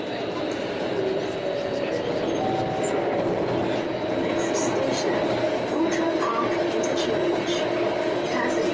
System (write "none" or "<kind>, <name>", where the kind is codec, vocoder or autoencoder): none